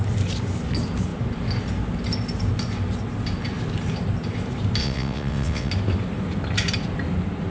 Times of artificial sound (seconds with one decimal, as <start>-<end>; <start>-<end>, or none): 4.8-5.7